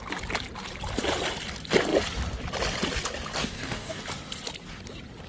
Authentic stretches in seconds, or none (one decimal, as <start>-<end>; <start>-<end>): 0.0-3.4; 4.0-5.3